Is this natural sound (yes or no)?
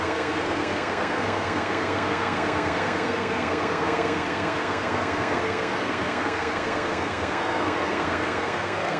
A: no